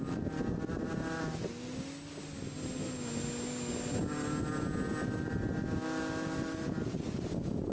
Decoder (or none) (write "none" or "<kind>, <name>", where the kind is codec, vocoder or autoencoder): none